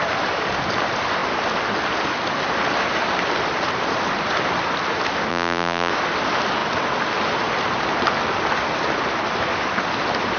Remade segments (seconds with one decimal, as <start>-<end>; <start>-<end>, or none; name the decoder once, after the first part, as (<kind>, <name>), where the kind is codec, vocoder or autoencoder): 5.3-5.9 (vocoder, BigVGAN v2)